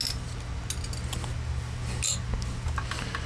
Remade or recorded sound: recorded